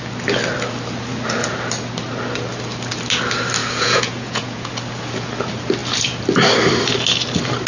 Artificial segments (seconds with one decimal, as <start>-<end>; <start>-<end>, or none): 3.6-4.7